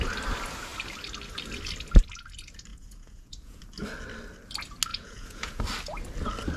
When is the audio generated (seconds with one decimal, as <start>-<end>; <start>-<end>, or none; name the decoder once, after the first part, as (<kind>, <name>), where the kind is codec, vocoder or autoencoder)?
2.7-3.6 (vocoder, Vocos); 4.9-5.6